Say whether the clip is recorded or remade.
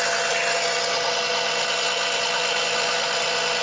recorded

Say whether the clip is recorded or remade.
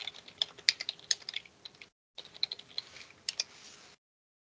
recorded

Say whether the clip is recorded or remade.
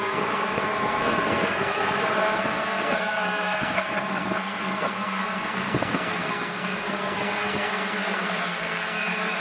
remade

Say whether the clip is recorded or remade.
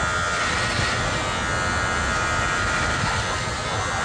recorded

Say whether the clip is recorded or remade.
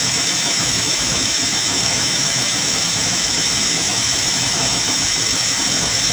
remade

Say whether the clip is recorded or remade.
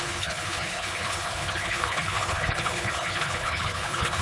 remade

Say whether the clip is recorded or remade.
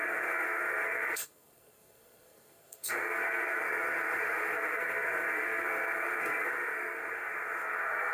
remade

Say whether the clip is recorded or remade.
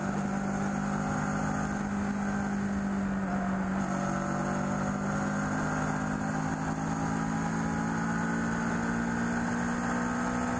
recorded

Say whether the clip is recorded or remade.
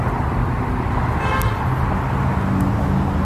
recorded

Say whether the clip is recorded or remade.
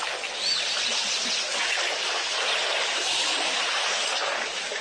recorded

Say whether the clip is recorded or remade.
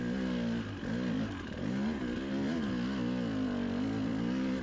recorded